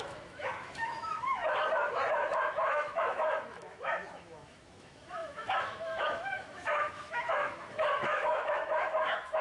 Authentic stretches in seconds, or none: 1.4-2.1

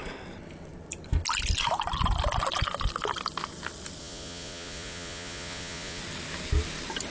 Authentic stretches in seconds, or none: 0.0-4.0; 6.0-7.1

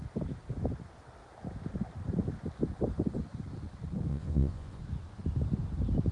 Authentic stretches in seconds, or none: 0.0-4.1; 4.8-6.1

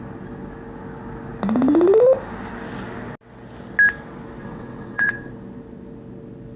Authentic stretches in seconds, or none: 0.0-4.4; 5.3-6.6

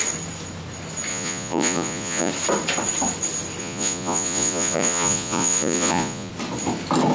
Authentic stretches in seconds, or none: 0.0-1.1; 2.3-3.6; 6.3-7.1

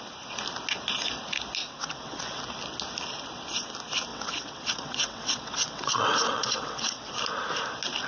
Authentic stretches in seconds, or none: 0.0-1.6; 2.4-4.1; 7.1-8.1

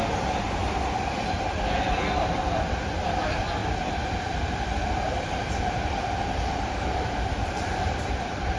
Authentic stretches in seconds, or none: 0.0-0.6; 2.9-3.6